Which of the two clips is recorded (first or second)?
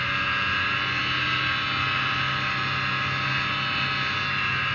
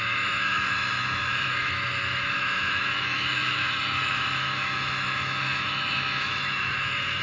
first